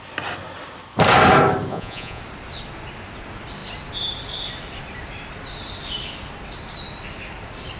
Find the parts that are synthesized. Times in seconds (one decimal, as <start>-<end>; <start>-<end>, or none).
1.7-2.2